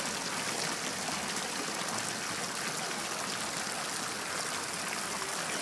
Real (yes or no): yes